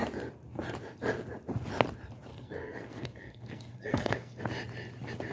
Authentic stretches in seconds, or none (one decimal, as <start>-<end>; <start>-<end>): 0.0-2.3; 4.4-5.3